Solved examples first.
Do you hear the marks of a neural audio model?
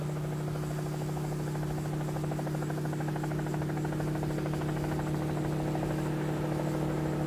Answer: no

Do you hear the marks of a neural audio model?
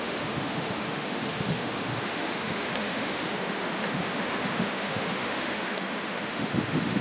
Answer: yes